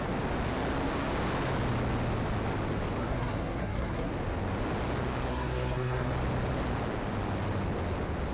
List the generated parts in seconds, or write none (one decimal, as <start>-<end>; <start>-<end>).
3.0-4.1; 5.3-6.1